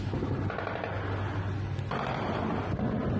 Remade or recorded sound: recorded